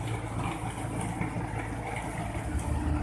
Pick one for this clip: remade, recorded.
recorded